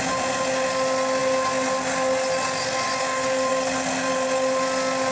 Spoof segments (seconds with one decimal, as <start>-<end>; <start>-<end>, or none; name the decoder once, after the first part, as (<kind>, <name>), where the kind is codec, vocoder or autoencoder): none

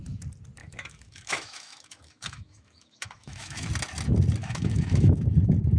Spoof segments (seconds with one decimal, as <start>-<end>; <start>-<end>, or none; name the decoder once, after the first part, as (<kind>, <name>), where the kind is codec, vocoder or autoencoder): 0.6-3.7 (autoencoder, DAC-VAE); 4.4-5.2

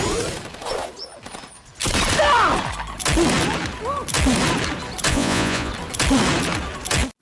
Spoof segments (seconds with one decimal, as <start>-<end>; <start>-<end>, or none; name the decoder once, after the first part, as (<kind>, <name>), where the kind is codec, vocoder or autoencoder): 5.1-5.7 (vocoder, Vocos)

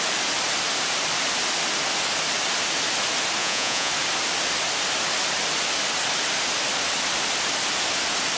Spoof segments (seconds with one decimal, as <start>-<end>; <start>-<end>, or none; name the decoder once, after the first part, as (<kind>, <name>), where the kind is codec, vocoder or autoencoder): 3.4-3.9 (vocoder, Vocos)